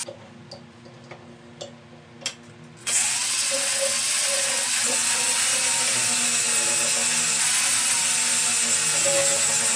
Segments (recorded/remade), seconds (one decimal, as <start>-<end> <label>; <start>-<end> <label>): 0.0-2.8 recorded; 2.8-5.4 remade; 5.4-9.8 recorded